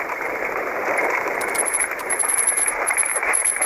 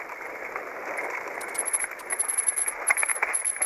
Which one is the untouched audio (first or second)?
second